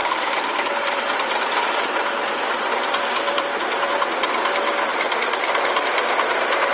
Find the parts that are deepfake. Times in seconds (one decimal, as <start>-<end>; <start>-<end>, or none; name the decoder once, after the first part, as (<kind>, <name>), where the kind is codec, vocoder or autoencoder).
0.0-3.9 (vocoder, BigVGAN v2)